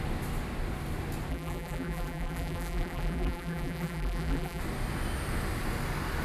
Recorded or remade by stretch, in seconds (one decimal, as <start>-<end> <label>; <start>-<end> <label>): 0.0-1.3 recorded; 1.3-4.6 remade; 4.6-6.2 recorded